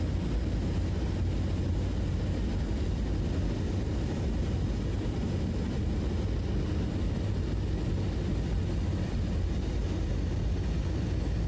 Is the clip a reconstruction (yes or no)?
no